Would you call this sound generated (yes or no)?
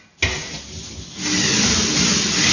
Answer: no